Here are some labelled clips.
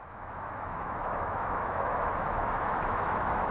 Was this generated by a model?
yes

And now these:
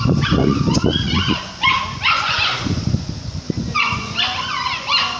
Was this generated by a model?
yes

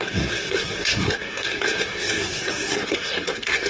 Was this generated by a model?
yes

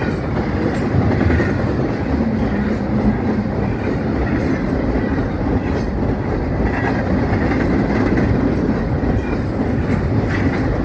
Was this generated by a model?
no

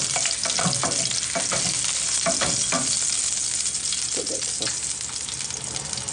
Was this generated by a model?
no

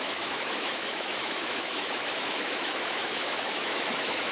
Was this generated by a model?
yes